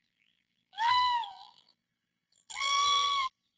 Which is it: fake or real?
fake